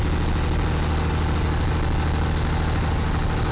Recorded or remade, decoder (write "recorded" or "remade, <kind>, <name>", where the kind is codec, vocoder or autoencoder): recorded